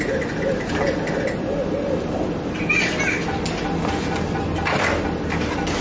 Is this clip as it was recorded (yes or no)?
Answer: yes